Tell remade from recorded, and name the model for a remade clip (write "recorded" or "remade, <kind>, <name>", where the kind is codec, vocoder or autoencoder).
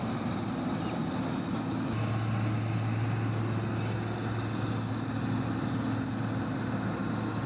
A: recorded